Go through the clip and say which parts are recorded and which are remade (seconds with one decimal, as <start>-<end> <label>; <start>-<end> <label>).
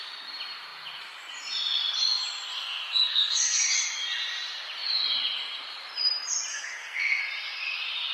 0.0-2.5 recorded; 2.5-3.6 remade; 3.6-6.5 recorded; 6.5-7.2 remade; 7.2-8.1 recorded